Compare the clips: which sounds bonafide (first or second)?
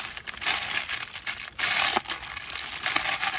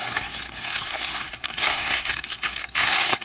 first